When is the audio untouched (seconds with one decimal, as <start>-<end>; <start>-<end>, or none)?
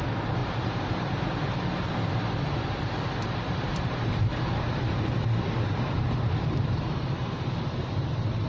0.0-0.4; 1.2-3.7; 7.1-8.5